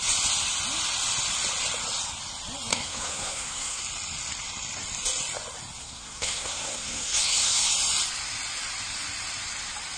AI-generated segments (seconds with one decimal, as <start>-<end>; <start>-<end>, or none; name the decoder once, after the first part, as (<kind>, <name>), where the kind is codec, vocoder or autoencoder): 2.7-3.8 (codec, SNAC); 5.8-7.7